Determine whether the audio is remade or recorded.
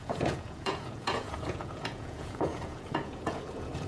remade